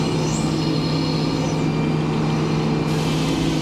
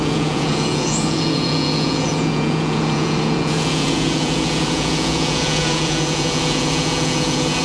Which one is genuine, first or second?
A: first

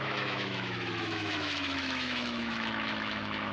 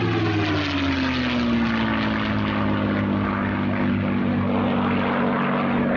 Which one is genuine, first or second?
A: second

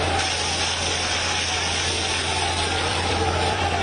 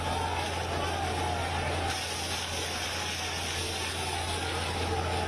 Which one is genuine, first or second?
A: second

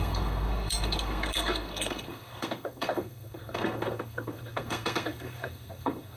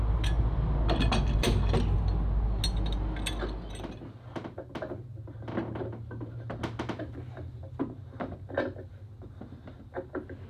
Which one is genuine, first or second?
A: second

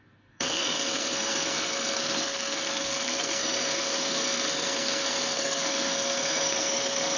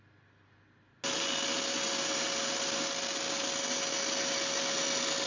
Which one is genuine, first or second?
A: second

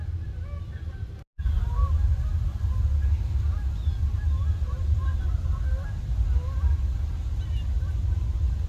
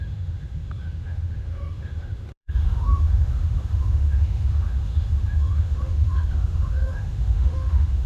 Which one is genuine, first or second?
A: first